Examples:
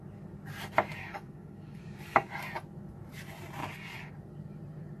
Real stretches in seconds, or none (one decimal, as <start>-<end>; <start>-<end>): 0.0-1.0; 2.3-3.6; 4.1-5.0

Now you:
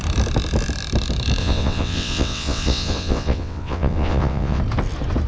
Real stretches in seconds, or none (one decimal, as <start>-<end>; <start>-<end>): 0.0-1.4; 4.6-5.3

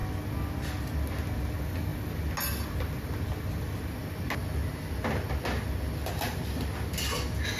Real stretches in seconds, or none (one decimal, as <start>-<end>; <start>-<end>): 0.0-7.6